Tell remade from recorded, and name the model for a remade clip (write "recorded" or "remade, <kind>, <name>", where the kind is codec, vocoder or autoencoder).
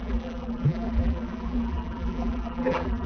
remade, vocoder, BigVGAN v2